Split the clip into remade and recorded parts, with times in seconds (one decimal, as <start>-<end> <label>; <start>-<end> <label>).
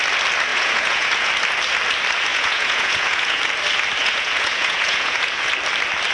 0.0-0.5 recorded; 0.5-1.3 remade; 1.3-2.3 recorded; 2.3-3.4 remade; 3.4-4.0 recorded; 4.0-5.5 remade; 5.5-6.1 recorded